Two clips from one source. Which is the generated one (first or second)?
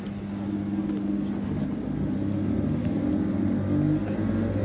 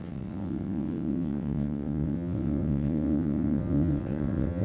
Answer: second